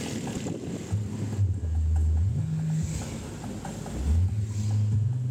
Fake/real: real